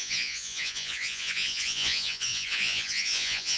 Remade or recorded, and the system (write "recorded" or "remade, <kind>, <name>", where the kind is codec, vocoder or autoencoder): remade, vocoder, Vocos